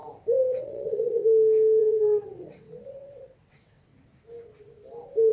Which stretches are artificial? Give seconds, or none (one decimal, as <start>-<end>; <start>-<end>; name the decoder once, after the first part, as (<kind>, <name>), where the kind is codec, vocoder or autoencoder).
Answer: 0.6-1.2 (vocoder, WaveNeXt); 1.8-3.9